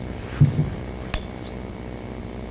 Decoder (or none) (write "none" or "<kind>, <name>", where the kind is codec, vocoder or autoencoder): none